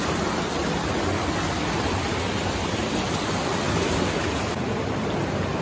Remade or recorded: recorded